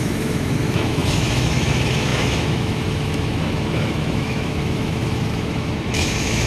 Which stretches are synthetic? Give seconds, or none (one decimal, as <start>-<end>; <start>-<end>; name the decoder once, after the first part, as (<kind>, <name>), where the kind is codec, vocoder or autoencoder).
0.0-6.5 (autoencoder, DAC-VAE)